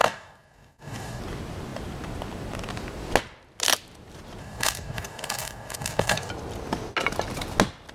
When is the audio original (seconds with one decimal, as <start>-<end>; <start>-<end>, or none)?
1.2-4.4; 6.3-7.9